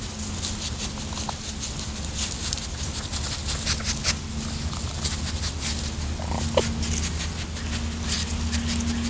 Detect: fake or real real